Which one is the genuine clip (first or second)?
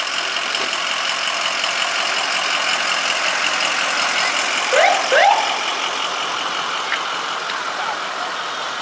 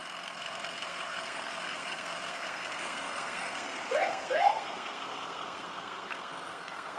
first